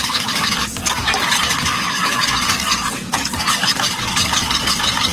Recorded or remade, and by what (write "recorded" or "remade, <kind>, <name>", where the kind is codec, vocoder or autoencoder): remade, codec, DAC